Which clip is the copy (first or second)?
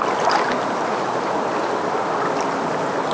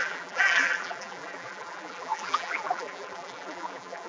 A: second